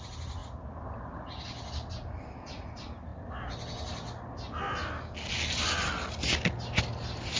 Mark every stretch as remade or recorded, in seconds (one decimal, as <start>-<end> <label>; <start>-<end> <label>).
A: 0.0-7.4 recorded